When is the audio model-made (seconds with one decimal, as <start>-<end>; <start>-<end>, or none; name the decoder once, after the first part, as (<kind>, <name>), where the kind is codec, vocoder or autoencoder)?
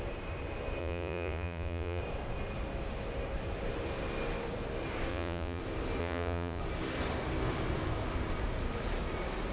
0.8-2.0 (vocoder, Vocos); 5.1-5.6; 6.0-6.6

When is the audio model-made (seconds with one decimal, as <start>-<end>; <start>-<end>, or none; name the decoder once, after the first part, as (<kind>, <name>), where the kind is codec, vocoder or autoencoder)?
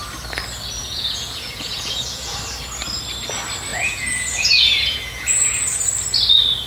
0.8-2.4 (vocoder, Vocos); 3.7-5.7